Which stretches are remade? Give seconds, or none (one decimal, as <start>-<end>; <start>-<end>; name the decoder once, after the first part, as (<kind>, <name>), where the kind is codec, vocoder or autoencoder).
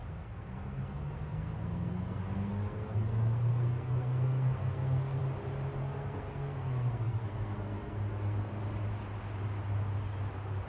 0.0-5.2 (codec, SNAC); 5.8-8.5